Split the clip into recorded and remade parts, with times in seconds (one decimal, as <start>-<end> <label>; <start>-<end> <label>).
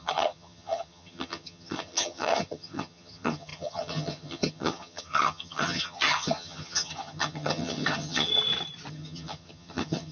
0.0-8.3 remade; 8.3-8.9 recorded; 8.9-10.1 remade